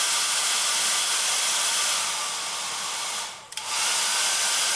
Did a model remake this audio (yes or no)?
no